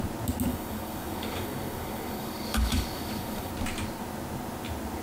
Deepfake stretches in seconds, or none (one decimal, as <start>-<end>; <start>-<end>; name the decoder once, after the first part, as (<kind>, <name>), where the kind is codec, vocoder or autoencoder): 0.5-3.5 (codec, DAC)